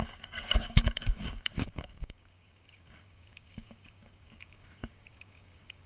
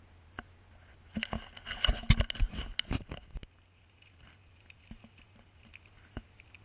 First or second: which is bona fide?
second